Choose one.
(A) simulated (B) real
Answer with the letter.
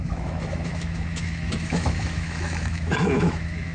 A